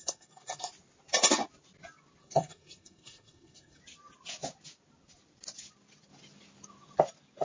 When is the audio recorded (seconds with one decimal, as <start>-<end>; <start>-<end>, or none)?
0.7-2.2; 3.8-7.4